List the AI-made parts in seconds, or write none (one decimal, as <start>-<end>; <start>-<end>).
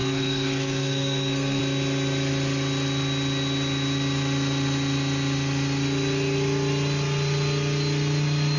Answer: 0.0-1.6